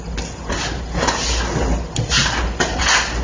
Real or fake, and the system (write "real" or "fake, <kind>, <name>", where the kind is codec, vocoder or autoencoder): real